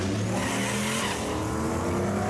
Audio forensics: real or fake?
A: real